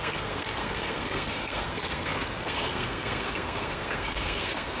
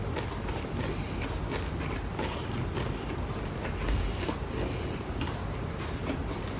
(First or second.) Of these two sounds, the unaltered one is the second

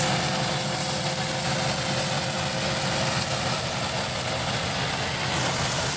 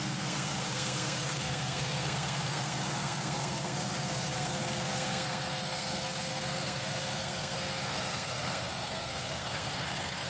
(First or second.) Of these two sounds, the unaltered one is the first